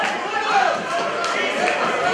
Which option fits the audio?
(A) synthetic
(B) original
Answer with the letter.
B